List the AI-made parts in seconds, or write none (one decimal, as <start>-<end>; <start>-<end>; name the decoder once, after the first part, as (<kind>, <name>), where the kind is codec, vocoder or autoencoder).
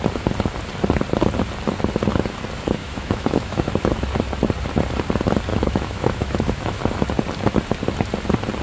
2.8-3.7 (autoencoder, DAC-VAE); 5.5-6.8